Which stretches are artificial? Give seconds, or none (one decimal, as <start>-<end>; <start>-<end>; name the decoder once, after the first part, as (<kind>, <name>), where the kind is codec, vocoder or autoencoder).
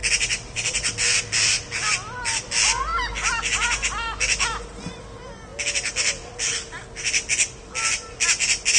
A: 0.0-1.2 (vocoder, BigVGAN v2)